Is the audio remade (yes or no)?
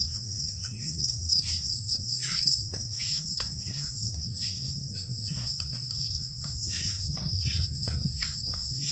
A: yes